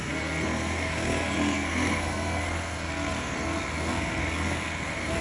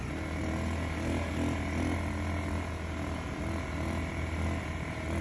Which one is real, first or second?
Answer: second